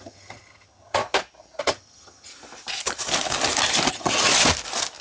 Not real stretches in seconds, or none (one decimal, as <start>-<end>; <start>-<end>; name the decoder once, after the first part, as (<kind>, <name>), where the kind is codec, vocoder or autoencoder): 0.0-1.0 (vocoder, HiFi-GAN); 1.6-2.3; 3.9-4.3